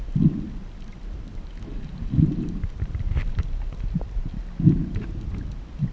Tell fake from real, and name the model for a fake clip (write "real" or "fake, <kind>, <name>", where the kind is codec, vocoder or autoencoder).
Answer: real